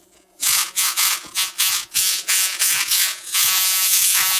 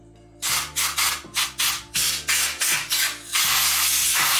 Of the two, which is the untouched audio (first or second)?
second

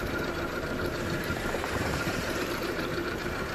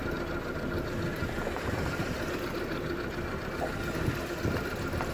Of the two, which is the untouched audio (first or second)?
second